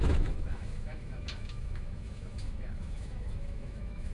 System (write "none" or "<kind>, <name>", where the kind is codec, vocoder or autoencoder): autoencoder, DAC-VAE